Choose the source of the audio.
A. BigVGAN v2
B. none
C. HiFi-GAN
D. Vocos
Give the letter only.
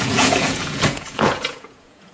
D